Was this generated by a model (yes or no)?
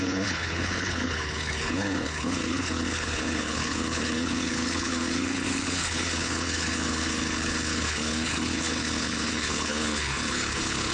yes